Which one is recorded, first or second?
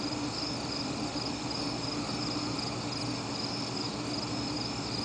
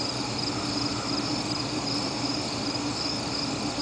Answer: first